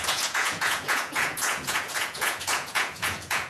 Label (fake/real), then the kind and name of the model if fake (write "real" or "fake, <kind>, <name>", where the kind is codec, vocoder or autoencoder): fake, vocoder, Vocos